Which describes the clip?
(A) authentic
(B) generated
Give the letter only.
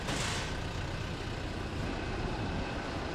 A